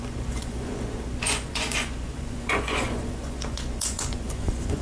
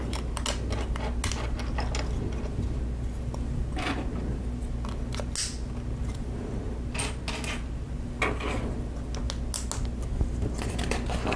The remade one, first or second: first